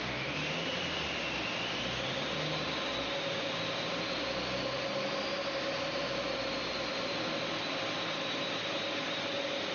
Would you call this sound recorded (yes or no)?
yes